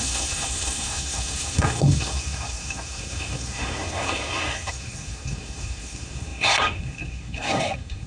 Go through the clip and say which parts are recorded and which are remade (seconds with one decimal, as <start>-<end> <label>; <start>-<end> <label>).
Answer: 0.0-8.1 remade